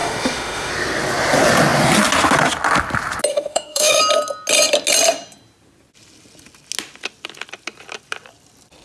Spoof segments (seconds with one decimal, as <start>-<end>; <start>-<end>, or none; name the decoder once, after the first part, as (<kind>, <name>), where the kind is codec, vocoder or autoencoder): 0.0-0.7 (autoencoder, DAC-VAE); 3.3-4.0